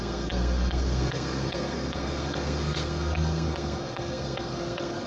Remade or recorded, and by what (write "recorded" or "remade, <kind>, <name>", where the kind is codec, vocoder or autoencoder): remade, codec, SNAC